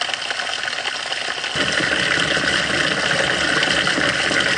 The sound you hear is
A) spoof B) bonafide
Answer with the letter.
B